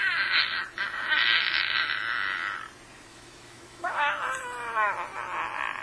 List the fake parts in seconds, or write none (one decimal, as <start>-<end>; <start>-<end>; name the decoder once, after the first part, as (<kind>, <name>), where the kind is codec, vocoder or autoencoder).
3.1-4.1 (autoencoder, DAC-VAE)